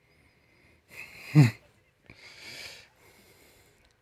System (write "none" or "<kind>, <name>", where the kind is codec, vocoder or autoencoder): none